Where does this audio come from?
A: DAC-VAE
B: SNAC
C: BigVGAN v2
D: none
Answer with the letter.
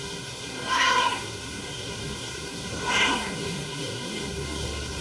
B